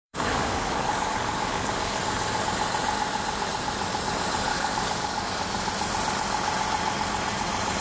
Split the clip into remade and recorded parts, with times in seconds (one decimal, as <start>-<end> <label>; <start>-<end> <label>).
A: 0.0-2.0 remade; 2.0-4.5 recorded; 4.5-5.3 remade; 5.3-7.8 recorded